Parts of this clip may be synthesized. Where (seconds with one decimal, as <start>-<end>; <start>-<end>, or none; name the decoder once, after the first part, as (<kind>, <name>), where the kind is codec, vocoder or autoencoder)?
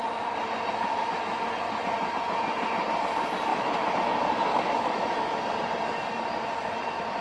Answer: 3.5-4.0 (autoencoder, DAC-VAE); 4.5-5.4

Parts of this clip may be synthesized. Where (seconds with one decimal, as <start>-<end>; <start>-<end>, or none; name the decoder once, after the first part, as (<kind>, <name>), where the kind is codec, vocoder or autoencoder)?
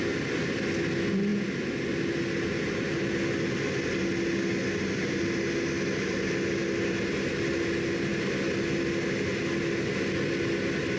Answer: none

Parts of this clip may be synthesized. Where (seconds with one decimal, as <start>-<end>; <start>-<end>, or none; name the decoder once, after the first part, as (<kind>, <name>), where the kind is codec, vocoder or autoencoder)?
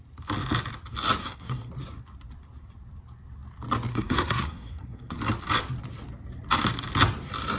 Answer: 1.2-1.7 (codec, SNAC); 3.9-5.2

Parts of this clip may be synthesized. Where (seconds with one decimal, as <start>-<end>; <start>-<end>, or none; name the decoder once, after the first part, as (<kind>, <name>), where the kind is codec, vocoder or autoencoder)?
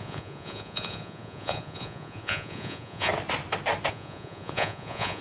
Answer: 0.0-3.1 (vocoder, Vocos); 3.9-5.2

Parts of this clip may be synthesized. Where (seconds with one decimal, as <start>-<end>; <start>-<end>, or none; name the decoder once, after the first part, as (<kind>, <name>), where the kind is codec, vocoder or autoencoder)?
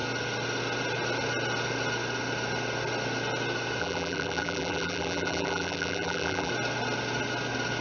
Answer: 3.8-6.5 (vocoder, BigVGAN v2)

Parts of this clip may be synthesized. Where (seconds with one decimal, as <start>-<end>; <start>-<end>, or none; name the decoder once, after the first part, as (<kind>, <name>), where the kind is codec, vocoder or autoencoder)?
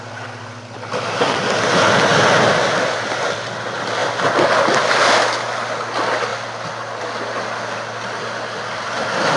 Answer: none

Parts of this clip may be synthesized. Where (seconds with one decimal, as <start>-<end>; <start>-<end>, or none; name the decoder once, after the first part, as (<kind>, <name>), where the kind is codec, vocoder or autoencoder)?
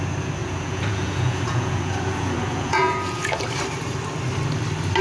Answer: 0.4-3.4 (vocoder, Vocos)